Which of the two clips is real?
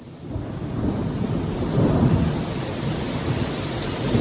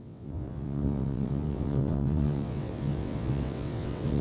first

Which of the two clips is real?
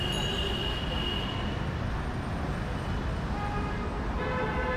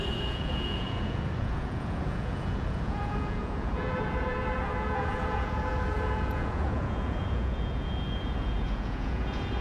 first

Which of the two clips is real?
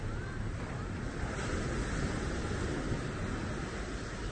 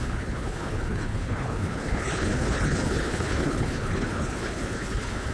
first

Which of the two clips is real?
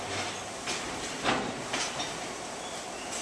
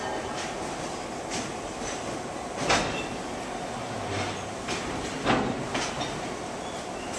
second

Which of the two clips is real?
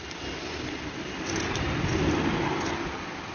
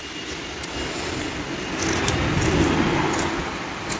second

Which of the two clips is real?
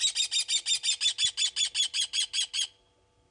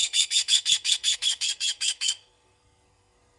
first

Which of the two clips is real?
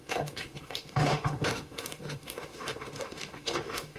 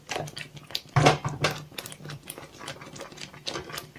second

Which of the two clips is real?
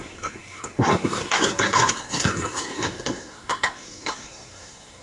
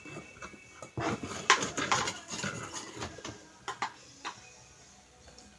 second